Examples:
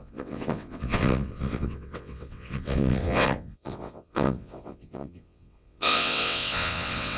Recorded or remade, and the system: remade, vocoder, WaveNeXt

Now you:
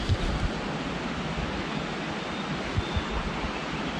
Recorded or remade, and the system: recorded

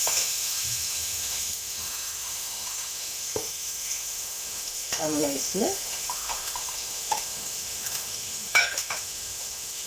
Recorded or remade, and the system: remade, autoencoder, DAC-VAE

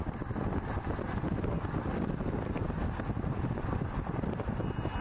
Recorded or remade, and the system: recorded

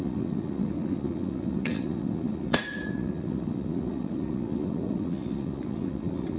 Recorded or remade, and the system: remade, vocoder, Vocos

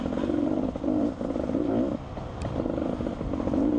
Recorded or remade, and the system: recorded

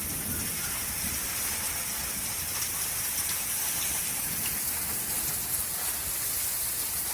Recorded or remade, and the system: recorded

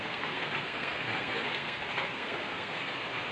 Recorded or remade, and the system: remade, codec, SNAC